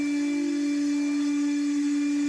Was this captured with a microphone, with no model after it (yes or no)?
yes